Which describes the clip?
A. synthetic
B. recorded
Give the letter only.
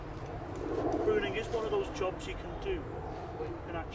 B